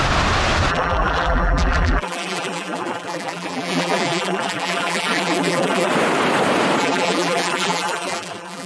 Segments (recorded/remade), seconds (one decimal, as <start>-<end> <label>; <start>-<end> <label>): 0.0-0.7 recorded; 0.7-5.9 remade; 5.9-6.8 recorded; 6.8-8.7 remade